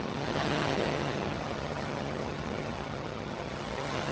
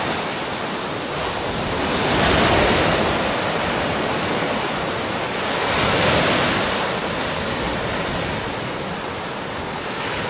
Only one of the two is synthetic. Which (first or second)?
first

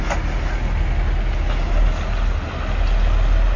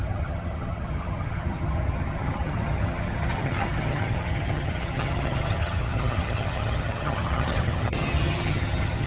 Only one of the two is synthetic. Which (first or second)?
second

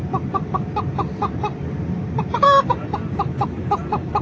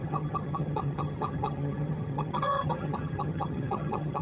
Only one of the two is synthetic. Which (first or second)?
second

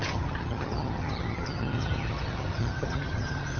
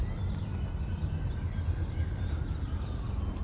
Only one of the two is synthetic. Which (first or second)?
first